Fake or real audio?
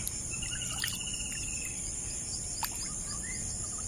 real